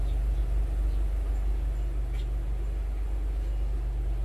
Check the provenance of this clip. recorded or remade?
recorded